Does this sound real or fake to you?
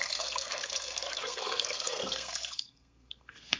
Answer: fake